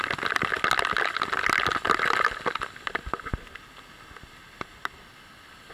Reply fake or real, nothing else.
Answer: real